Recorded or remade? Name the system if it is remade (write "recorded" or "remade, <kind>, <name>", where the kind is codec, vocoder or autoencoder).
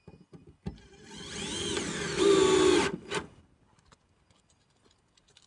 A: recorded